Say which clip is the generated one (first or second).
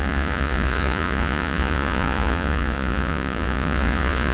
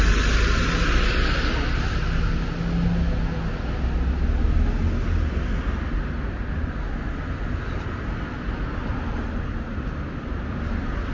first